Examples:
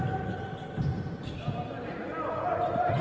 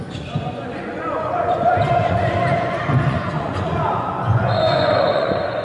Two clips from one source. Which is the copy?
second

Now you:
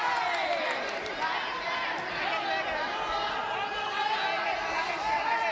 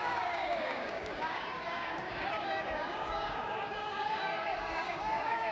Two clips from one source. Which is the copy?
second